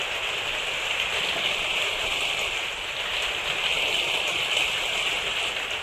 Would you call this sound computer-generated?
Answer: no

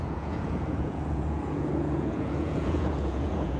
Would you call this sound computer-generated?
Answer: yes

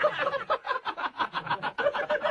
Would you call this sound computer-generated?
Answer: yes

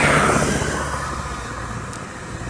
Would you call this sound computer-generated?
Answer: no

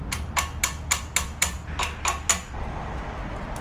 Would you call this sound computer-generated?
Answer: no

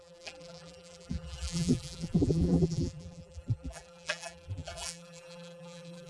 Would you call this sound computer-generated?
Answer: yes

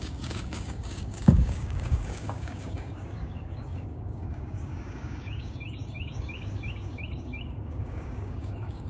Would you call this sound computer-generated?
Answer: yes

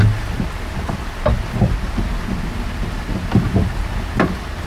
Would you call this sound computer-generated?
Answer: no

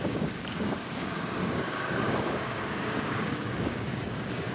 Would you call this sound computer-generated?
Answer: yes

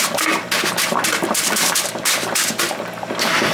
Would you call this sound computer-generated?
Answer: no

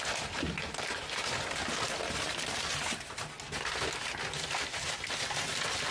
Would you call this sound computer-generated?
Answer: no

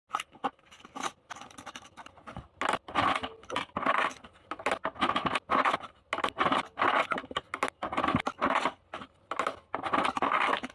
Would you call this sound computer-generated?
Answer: no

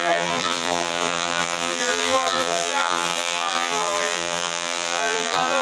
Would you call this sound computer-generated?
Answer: yes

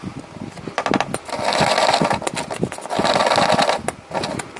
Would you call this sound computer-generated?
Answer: no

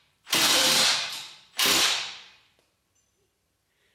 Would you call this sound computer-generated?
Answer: yes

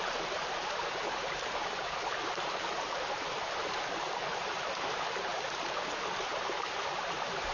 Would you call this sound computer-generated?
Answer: yes